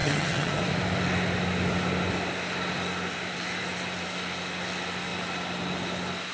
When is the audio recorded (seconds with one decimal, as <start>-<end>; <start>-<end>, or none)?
0.6-6.3